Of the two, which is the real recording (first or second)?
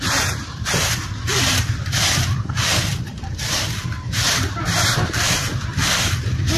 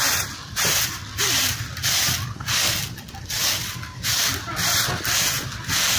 second